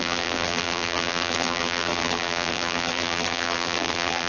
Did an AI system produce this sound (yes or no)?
yes